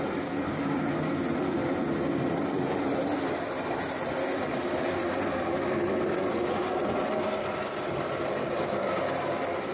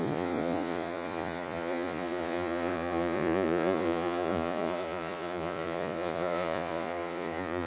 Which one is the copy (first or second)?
second